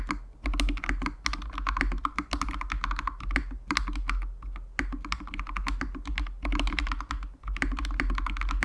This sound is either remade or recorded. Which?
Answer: recorded